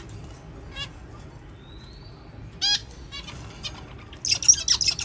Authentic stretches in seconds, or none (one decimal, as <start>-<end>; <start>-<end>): 0.0-5.0